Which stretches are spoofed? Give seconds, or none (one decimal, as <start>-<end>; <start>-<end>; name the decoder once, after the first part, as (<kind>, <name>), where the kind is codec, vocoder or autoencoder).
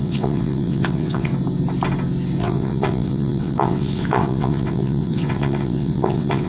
0.0-1.3 (vocoder, WaveNeXt); 2.4-6.5